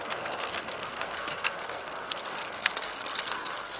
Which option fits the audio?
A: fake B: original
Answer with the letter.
A